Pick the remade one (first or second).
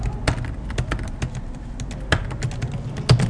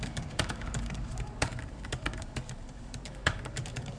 second